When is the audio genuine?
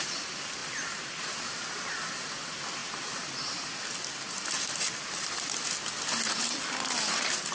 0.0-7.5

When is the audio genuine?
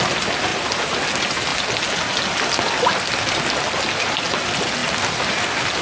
0.0-0.5; 1.0-4.8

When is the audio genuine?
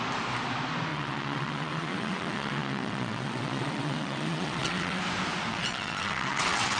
0.0-0.9; 5.0-5.5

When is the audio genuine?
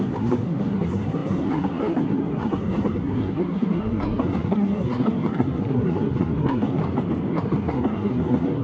6.8-7.3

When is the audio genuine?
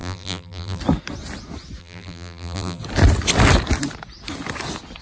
0.8-1.8; 2.8-5.0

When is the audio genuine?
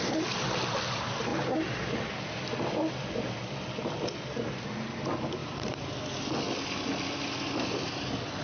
0.0-8.4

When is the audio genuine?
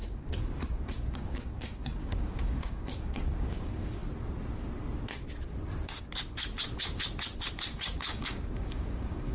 4.0-7.5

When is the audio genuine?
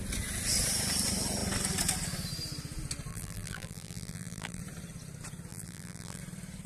0.0-3.1; 4.6-5.5; 6.2-6.7